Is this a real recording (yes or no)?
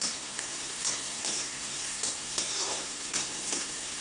no